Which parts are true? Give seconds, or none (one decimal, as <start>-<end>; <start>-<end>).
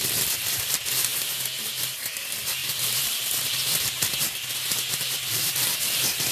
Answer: 1.1-2.1